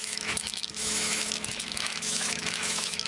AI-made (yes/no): yes